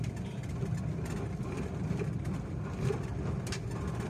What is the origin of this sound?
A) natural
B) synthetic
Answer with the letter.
A